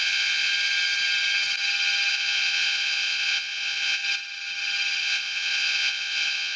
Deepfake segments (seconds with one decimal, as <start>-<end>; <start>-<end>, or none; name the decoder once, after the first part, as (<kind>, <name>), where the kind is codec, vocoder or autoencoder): 0.0-0.5 (vocoder, Vocos); 2.1-4.0; 5.0-6.6